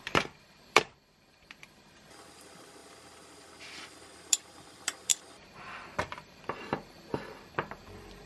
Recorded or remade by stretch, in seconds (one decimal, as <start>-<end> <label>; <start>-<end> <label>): 0.0-5.1 remade; 5.1-5.8 recorded; 5.8-8.3 remade